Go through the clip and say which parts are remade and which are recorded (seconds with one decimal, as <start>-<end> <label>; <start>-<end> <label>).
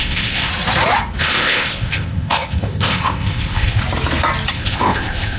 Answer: 0.0-0.5 remade; 0.5-1.2 recorded; 1.2-3.8 remade; 3.8-4.5 recorded; 4.5-5.4 remade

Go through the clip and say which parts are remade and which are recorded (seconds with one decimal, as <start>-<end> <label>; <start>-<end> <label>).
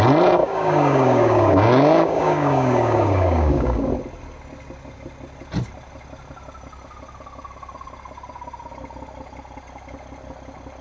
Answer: 0.0-0.4 recorded; 0.4-3.9 remade; 3.9-10.8 recorded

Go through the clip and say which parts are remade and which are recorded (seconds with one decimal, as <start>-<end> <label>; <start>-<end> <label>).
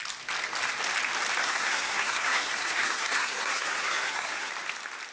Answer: 0.0-1.4 recorded; 1.4-4.5 remade; 4.5-5.1 recorded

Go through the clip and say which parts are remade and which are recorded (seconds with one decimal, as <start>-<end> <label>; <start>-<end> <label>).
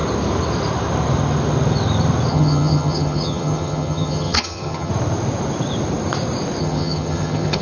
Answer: 0.0-2.3 recorded; 2.3-4.9 remade; 4.9-6.6 recorded; 6.6-7.6 remade